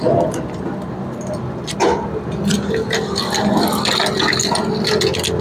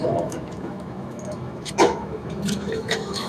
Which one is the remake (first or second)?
second